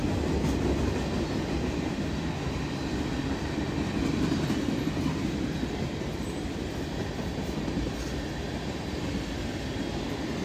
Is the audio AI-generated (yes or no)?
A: no